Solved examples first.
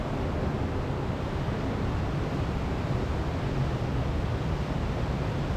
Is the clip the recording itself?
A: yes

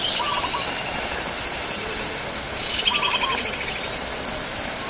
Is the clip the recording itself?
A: yes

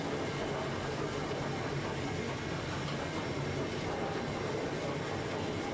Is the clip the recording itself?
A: yes